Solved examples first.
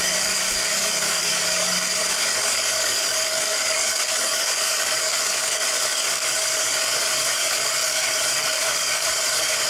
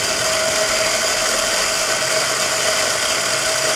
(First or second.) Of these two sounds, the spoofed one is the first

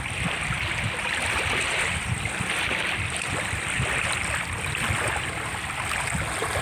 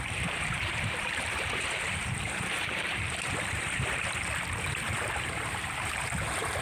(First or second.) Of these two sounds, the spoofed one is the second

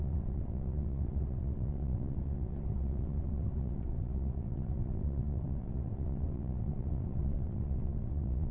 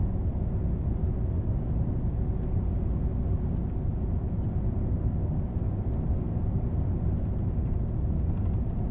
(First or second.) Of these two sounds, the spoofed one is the first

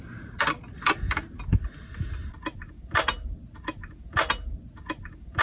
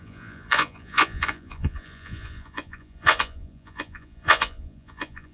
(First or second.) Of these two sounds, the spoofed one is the second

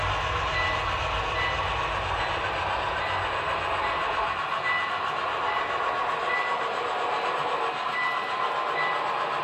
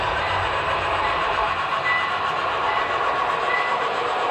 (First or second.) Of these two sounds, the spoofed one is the second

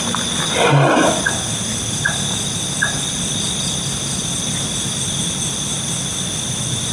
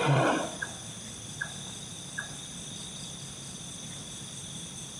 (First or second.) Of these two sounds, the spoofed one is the second